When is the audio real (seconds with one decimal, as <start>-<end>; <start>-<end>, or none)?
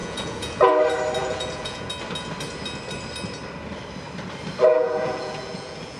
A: 0.7-1.2; 1.9-4.7